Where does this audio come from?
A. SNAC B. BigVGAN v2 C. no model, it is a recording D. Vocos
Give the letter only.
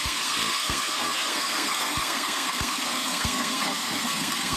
A